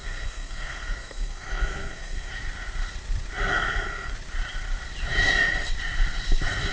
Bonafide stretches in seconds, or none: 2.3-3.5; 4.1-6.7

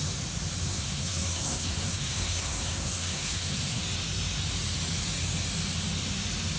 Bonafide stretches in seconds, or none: 0.0-0.7; 3.8-6.6

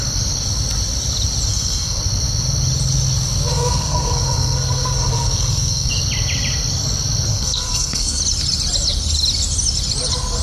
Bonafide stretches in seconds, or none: 0.0-1.5; 2.0-3.5; 5.9-7.3; 8.2-10.4

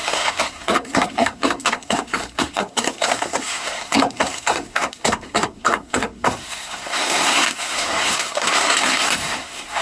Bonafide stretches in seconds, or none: none